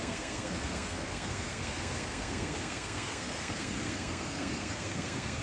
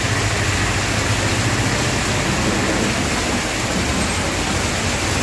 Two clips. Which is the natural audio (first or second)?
second